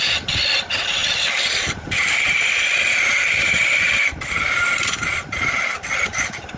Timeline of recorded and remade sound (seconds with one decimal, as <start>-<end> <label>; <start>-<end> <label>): 0.0-6.6 recorded